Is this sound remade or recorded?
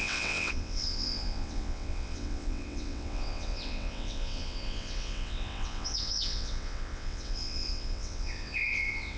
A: remade